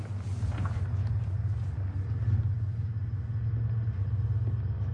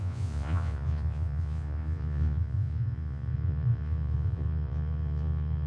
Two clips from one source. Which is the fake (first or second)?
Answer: second